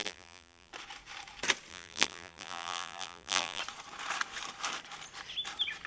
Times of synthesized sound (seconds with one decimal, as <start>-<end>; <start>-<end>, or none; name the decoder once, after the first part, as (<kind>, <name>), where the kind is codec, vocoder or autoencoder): 0.0-0.7 (vocoder, BigVGAN v2); 1.7-3.6